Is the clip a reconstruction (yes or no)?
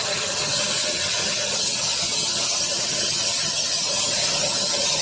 yes